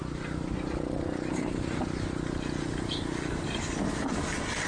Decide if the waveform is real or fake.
real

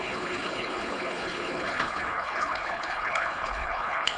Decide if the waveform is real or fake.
fake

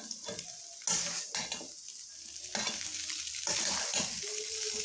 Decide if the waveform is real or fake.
real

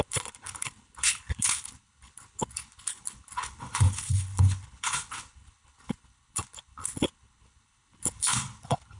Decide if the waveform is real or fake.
fake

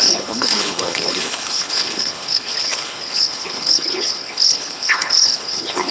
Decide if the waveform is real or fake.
fake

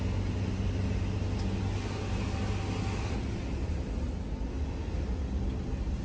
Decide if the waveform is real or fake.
real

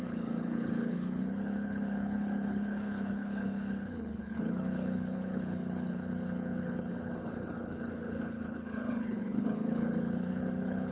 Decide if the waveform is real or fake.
fake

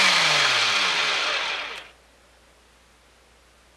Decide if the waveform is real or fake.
real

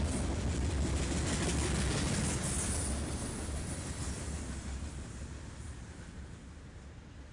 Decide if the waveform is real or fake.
real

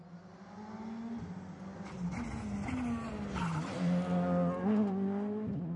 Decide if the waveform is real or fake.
real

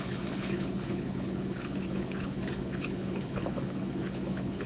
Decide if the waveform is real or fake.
fake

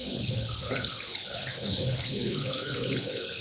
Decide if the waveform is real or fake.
fake